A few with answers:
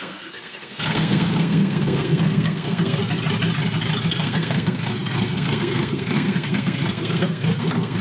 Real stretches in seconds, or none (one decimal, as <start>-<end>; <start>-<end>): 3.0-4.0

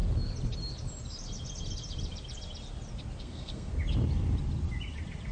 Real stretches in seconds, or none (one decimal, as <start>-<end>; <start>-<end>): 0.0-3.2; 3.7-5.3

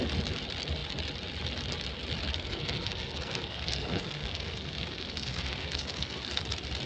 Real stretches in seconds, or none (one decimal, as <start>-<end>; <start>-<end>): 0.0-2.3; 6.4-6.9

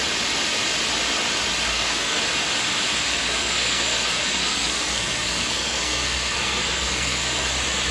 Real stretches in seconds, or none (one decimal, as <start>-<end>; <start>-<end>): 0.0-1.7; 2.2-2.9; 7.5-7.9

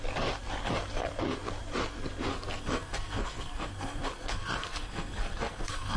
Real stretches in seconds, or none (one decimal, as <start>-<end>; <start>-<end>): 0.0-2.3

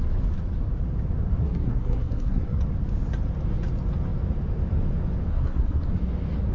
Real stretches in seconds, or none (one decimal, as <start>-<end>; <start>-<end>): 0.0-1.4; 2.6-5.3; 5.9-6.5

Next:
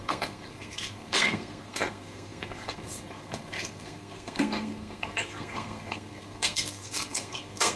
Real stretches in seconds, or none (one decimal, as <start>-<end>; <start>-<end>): none